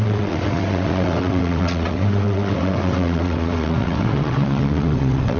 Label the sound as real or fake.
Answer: fake